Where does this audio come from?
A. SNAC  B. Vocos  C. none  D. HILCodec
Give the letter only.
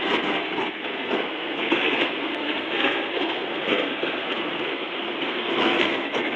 A